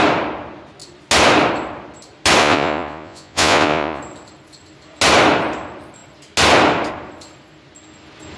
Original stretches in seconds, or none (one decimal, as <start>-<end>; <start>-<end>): 0.0-2.4; 4.0-8.4